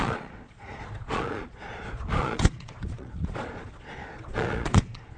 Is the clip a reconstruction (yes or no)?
yes